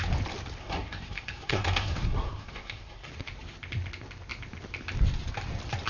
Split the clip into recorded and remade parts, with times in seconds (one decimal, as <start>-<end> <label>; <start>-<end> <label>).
0.0-0.6 recorded; 0.6-3.1 remade; 3.1-5.9 recorded

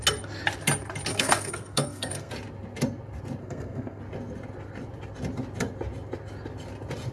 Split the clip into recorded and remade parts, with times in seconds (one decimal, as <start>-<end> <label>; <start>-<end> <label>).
0.0-1.1 recorded; 1.1-2.3 remade; 2.3-3.4 recorded; 3.4-4.0 remade; 4.0-7.1 recorded

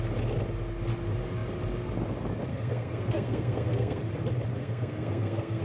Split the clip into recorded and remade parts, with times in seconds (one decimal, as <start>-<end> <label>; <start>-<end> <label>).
0.0-2.5 recorded; 2.5-4.0 remade; 4.0-4.5 recorded; 4.5-5.6 remade

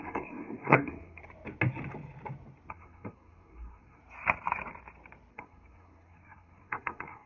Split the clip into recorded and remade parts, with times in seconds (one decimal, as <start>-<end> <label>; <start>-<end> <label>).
0.0-1.2 remade; 1.2-2.7 recorded; 2.7-4.0 remade; 4.0-5.3 recorded; 5.3-7.3 remade

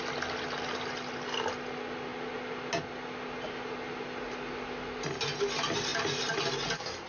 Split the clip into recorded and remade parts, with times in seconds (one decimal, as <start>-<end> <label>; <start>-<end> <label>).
0.0-7.1 recorded

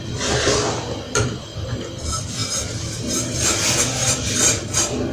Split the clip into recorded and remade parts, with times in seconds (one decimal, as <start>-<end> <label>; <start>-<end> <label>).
0.0-5.1 recorded

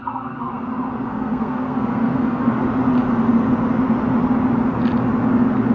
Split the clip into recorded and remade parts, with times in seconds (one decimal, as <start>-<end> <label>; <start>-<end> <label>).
0.0-0.5 remade; 0.5-1.1 recorded; 1.1-2.5 remade; 2.5-5.7 recorded

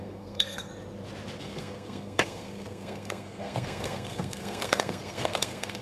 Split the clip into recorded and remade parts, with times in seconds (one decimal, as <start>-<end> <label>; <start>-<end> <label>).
0.0-0.7 remade; 0.7-1.4 recorded; 1.4-5.8 remade